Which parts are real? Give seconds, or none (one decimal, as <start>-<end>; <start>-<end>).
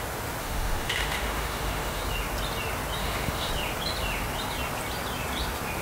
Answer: 0.0-0.4; 2.0-3.0; 3.5-5.8